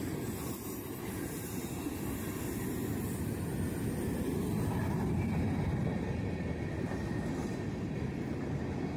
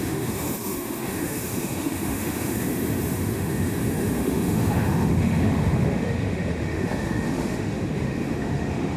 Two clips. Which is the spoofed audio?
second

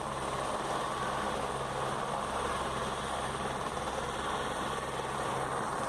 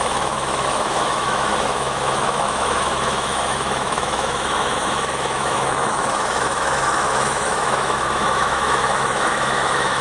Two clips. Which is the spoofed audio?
second